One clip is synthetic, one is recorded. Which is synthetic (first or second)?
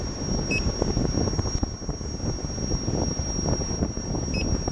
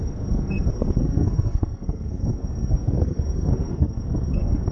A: second